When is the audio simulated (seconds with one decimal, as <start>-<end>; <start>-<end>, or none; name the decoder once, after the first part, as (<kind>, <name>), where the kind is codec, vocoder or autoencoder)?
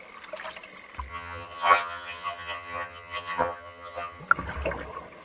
1.1-4.2 (vocoder, HiFi-GAN)